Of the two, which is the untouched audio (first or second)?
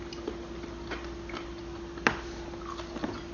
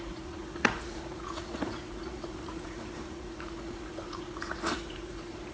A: first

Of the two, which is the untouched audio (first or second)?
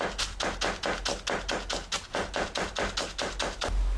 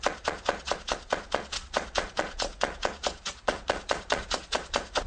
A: first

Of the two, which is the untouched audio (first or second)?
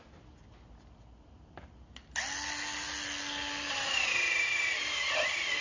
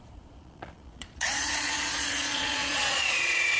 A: first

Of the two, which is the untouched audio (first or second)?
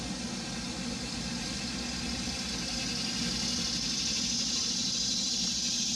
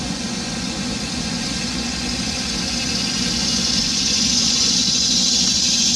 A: first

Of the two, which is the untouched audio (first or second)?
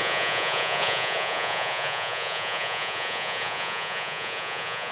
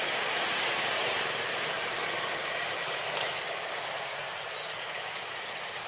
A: second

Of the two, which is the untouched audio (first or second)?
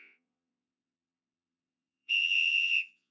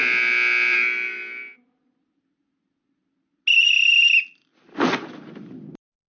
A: second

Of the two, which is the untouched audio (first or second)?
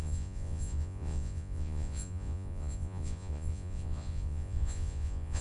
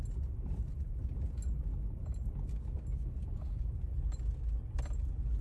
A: second